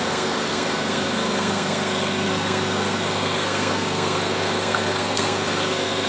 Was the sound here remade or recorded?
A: remade